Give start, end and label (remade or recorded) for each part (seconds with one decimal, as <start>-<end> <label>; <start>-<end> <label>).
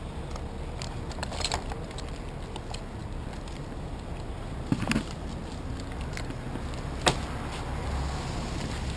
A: 0.0-1.2 recorded; 1.2-2.0 remade; 2.0-3.0 recorded; 3.0-5.3 remade; 5.3-9.0 recorded